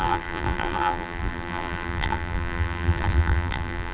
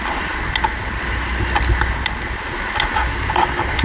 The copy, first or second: first